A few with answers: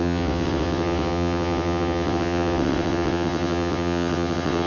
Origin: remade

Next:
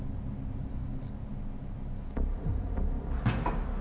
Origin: recorded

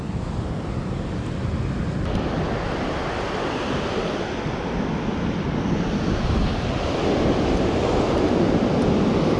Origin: recorded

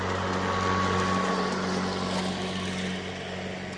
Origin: recorded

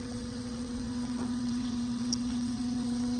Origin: remade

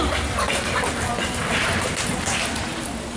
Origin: recorded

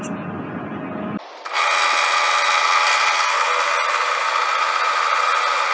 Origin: recorded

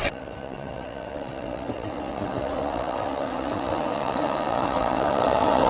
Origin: remade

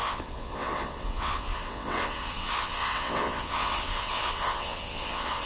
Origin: remade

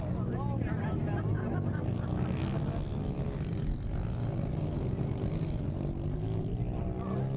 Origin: recorded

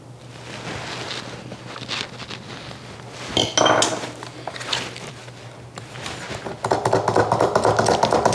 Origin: recorded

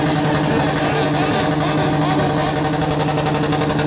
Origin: recorded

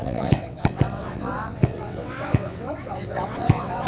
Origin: remade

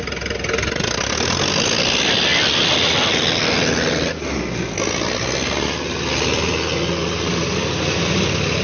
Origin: recorded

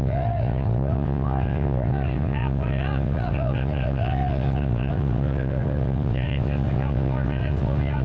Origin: remade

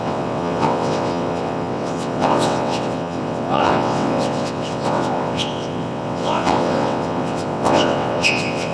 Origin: remade